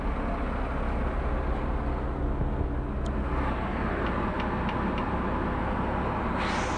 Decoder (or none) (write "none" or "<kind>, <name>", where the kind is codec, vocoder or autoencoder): none